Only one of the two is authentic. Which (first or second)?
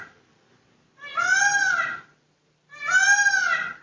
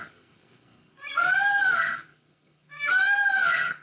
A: first